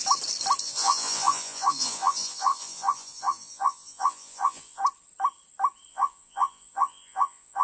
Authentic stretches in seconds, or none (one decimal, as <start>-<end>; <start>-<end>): 0.0-0.6; 4.8-5.9